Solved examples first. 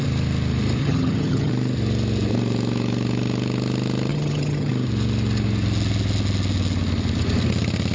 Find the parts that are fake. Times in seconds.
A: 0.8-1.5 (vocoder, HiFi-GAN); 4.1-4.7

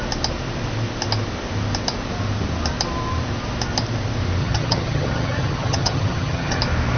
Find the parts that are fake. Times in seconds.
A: 4.4-6.6 (vocoder, HiFi-GAN)

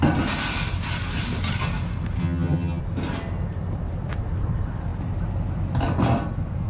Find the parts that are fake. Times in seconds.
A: 2.2-2.8 (vocoder, HiFi-GAN)

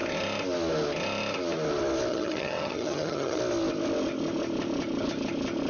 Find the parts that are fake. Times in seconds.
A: 2.1-3.4 (vocoder, HiFi-GAN)

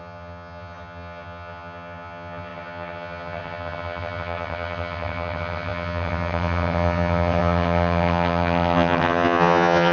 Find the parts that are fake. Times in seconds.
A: 0.0-9.9 (vocoder, HiFi-GAN)

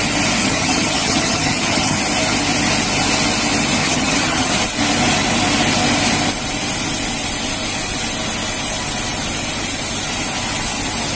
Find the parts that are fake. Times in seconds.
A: 0.4-2.0 (vocoder, HiFi-GAN); 3.8-4.5